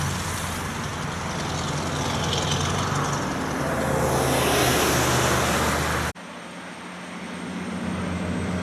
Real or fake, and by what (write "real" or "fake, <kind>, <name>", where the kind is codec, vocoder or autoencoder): real